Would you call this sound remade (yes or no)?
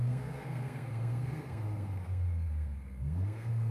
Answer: yes